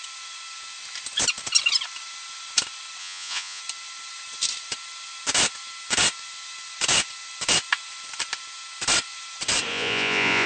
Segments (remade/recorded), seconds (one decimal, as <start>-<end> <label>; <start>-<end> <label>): 0.0-3.0 recorded; 3.0-3.6 remade; 3.6-9.7 recorded; 9.7-10.5 remade

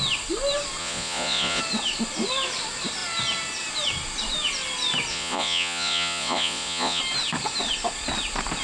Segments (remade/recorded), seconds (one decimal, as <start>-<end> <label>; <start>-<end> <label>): 0.0-0.8 recorded; 0.8-1.6 remade; 1.6-5.1 recorded; 5.1-7.0 remade; 7.0-8.6 recorded

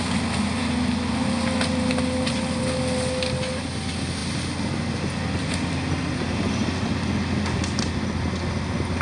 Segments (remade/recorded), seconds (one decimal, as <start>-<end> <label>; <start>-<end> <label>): 0.0-9.0 recorded

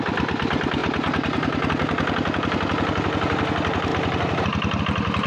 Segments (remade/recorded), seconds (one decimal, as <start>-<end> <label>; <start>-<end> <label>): 0.0-5.3 recorded

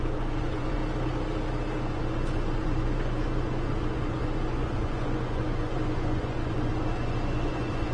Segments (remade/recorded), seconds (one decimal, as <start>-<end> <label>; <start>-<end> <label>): 0.0-0.8 remade; 0.8-1.8 recorded; 1.8-7.9 remade

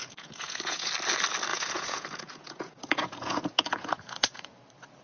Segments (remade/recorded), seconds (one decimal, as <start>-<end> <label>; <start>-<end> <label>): 0.0-0.9 remade; 0.9-1.5 recorded; 1.5-4.5 remade; 4.5-5.0 recorded